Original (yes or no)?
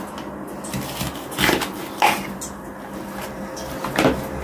yes